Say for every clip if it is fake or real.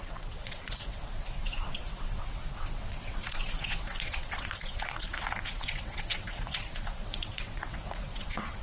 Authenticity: fake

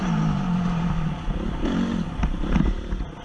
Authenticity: real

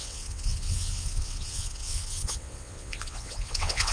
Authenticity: fake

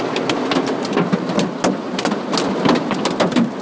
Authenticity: real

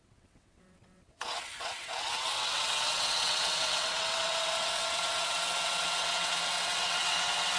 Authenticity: fake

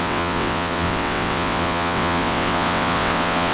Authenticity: fake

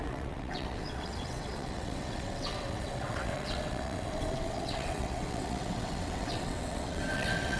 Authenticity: fake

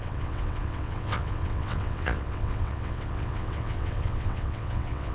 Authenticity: fake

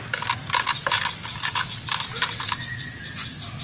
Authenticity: real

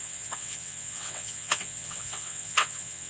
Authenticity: fake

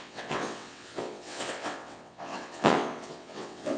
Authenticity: fake